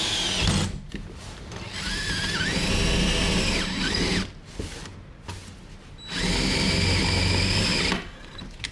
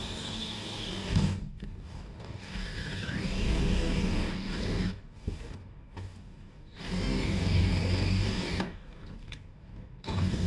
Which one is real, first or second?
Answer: first